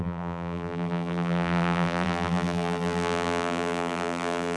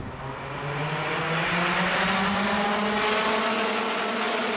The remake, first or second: first